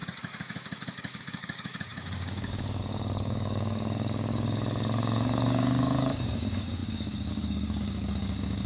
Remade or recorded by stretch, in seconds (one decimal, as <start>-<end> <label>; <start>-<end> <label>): 0.0-8.7 remade